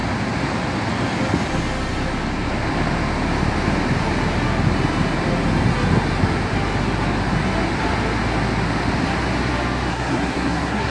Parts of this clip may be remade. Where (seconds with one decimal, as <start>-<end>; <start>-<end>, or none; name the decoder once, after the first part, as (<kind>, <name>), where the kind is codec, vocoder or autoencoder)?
9.9-10.9 (codec, SNAC)